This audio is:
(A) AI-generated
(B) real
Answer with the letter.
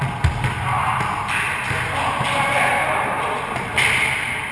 B